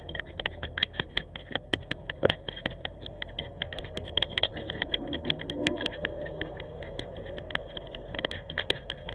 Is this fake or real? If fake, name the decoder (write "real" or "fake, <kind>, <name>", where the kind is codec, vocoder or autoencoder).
fake, codec, SNAC